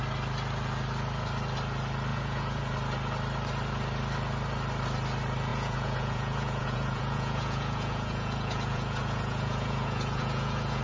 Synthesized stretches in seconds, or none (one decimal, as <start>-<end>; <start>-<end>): 2.1-2.6; 5.5-10.8